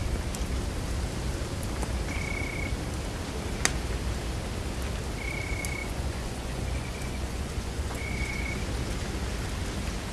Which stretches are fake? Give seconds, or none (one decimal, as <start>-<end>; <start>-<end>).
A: 5.8-8.6

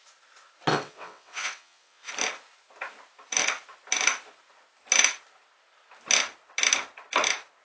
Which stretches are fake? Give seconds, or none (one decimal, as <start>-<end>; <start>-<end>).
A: 0.7-2.1

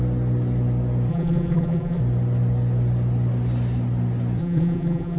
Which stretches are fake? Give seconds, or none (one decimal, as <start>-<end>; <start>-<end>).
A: 1.1-2.0; 4.4-5.2

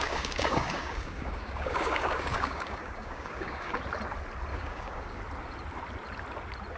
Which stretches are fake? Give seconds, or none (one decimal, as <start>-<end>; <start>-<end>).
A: 0.0-3.8; 4.5-5.2

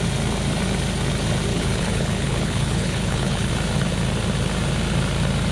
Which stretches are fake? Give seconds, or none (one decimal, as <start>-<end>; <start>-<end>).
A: 1.5-3.5

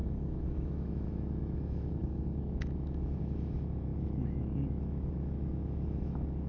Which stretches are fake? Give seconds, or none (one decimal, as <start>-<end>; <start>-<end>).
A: 0.0-6.5